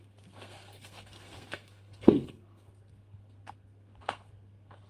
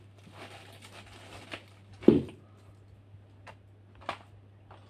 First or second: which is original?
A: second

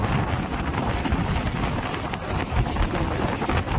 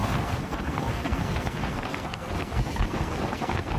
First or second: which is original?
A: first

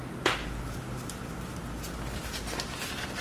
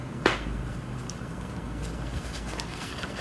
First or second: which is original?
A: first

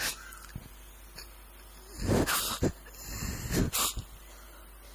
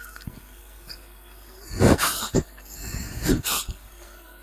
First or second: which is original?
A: first